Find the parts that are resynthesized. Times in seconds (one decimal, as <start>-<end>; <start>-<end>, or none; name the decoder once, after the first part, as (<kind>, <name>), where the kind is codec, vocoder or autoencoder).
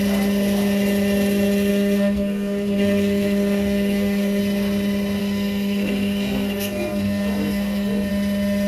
1.7-4.4 (codec, SNAC); 5.2-8.1